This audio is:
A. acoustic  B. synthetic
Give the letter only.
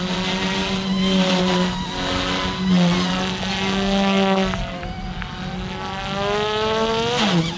A